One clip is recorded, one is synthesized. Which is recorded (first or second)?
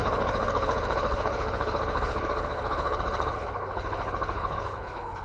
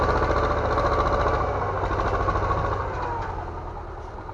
second